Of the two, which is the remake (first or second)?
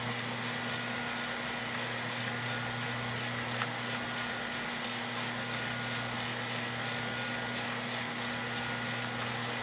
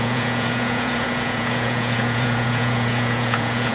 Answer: second